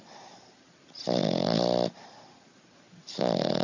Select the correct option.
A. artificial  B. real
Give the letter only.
B